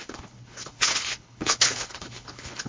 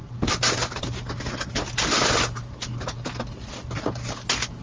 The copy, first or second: first